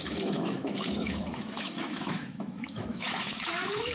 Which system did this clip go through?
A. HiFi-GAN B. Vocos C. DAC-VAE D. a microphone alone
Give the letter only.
C